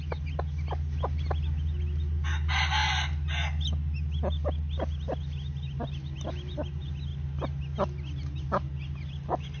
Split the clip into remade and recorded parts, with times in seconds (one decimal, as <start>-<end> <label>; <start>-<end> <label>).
0.0-9.6 recorded